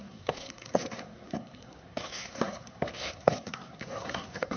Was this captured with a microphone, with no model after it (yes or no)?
no